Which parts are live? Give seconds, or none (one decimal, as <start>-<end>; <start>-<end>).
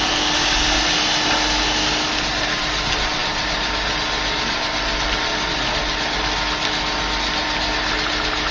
0.0-8.5